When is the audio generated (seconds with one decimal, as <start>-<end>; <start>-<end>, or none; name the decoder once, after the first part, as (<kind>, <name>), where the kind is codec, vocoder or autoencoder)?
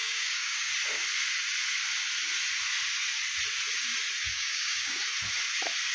0.0-0.7 (codec, DAC); 4.2-5.0